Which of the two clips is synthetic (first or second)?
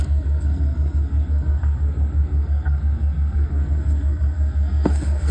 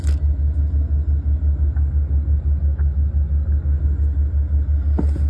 first